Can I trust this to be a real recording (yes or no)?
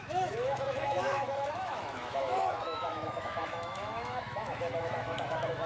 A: no